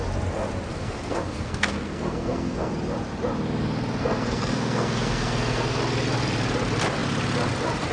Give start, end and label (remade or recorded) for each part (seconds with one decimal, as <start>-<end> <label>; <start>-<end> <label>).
0.0-0.7 recorded; 0.7-2.7 remade; 2.7-4.0 recorded; 4.0-5.8 remade; 5.8-7.9 recorded